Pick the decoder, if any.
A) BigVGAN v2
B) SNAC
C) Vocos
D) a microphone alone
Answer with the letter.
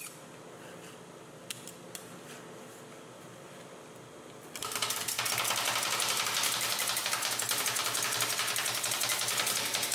D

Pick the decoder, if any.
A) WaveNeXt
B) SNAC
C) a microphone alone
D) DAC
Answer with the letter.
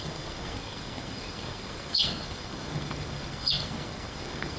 B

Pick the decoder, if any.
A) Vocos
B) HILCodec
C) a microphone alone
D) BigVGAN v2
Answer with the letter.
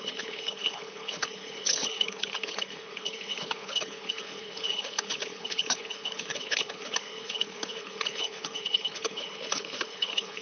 B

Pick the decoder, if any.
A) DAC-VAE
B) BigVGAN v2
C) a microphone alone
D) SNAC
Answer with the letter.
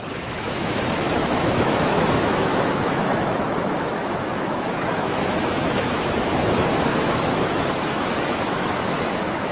A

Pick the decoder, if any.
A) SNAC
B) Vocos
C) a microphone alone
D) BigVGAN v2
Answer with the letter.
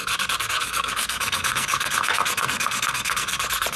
A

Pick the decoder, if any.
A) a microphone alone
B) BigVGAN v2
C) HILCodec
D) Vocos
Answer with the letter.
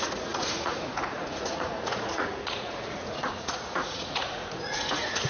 D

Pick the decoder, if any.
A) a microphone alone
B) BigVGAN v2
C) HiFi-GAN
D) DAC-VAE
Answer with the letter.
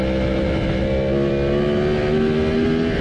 A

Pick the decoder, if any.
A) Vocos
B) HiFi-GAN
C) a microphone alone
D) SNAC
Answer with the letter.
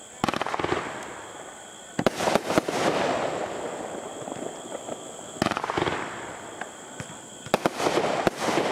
C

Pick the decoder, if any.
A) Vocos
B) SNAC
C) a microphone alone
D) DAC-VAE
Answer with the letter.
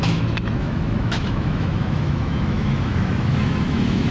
D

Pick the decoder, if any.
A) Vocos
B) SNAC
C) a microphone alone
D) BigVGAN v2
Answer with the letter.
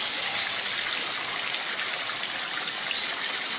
C